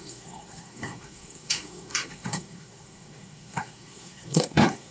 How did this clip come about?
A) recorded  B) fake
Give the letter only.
B